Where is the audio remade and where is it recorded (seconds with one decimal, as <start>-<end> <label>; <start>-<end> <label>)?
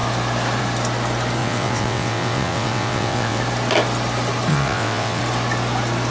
0.0-1.4 recorded; 1.4-3.4 remade; 3.4-4.5 recorded; 4.5-5.2 remade; 5.2-6.1 recorded